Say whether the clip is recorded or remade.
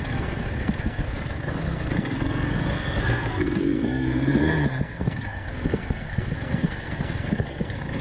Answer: remade